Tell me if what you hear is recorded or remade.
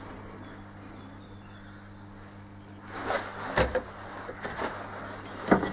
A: recorded